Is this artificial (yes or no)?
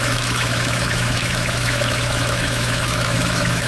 yes